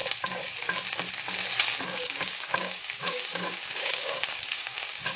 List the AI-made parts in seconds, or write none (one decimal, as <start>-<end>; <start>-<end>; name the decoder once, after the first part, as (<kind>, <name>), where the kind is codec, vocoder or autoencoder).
1.9-5.2 (codec, DAC)